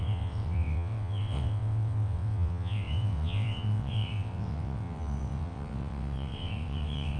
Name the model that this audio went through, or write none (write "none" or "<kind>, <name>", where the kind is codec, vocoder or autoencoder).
vocoder, WaveNeXt